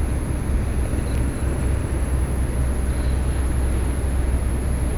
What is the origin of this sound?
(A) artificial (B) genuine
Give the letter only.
B